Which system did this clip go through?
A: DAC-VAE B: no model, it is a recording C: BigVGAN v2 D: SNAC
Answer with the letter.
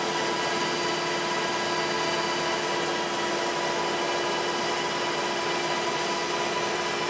B